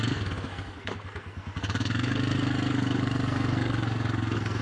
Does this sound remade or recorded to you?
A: remade